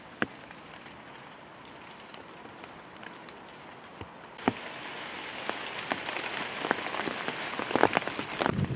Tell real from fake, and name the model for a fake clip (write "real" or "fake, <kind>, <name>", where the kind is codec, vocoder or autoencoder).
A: real